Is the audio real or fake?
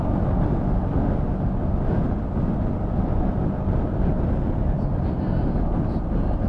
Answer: real